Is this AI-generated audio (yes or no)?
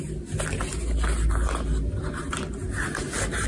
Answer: no